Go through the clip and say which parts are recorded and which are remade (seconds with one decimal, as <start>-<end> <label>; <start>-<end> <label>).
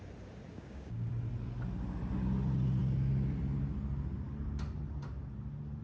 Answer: 0.0-0.5 recorded; 0.5-1.1 remade; 1.1-5.8 recorded